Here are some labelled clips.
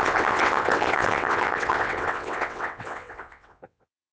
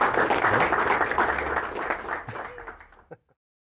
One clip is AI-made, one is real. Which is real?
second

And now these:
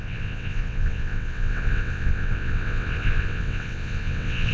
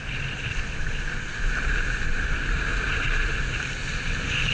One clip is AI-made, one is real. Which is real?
second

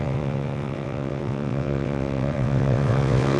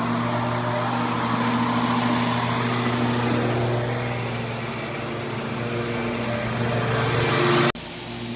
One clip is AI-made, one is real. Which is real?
second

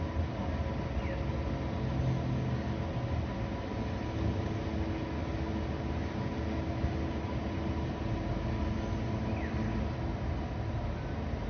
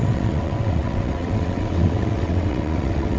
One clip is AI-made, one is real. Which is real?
first